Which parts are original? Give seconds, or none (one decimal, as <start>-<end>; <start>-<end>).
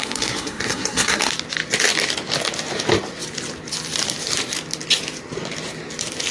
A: 1.3-6.3